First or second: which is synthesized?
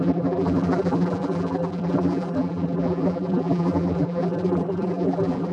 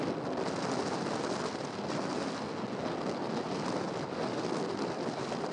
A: first